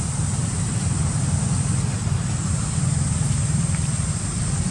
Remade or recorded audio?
recorded